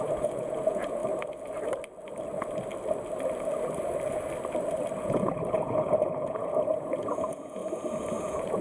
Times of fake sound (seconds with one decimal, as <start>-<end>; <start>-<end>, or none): 0.0-1.0; 5.0-7.6; 8.2-8.6